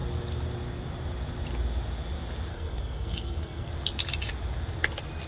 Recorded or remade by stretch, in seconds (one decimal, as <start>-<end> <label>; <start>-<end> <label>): 0.0-2.5 recorded; 2.5-3.7 remade; 3.7-5.3 recorded